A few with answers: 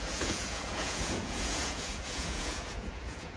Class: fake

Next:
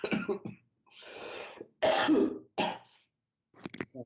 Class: real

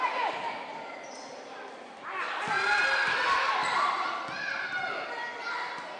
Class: real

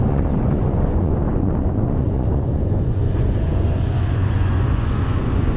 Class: fake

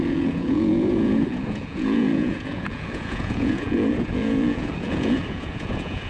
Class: fake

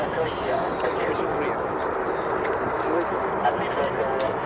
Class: real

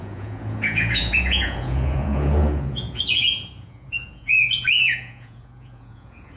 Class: fake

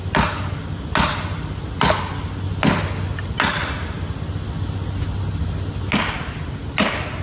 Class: real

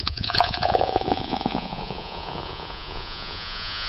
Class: fake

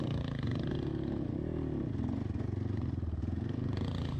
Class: real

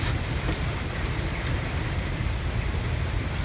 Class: real